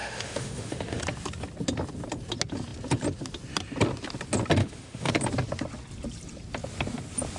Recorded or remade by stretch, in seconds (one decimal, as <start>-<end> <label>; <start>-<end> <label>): 0.0-1.0 remade; 1.0-4.6 recorded; 4.6-5.1 remade; 5.1-7.4 recorded